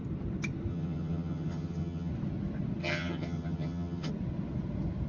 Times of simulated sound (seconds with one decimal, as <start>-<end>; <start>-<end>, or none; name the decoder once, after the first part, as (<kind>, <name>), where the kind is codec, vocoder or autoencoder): 0.7-2.1 (vocoder, HiFi-GAN); 2.8-4.1